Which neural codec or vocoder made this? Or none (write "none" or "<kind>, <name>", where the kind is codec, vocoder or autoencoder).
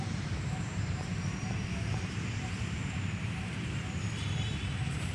vocoder, BigVGAN v2